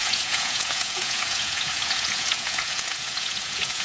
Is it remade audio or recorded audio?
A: remade